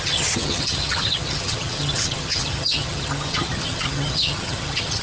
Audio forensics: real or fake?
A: fake